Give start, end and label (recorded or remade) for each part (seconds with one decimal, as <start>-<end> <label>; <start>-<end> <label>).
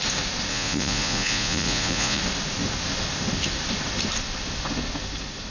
0.0-0.5 recorded; 0.5-2.2 remade; 2.2-5.5 recorded